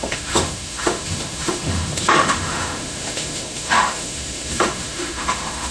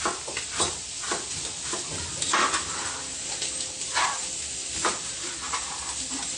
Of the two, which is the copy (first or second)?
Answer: first